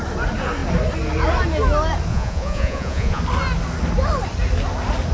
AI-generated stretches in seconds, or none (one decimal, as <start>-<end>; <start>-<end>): 2.1-3.2